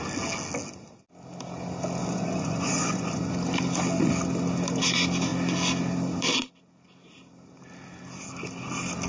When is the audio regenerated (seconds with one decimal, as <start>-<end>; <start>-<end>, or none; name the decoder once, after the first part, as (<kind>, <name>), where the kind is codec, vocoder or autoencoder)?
2.0-3.3 (vocoder, Vocos)